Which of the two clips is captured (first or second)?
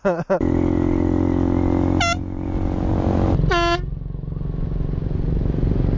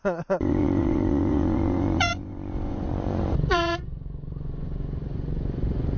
first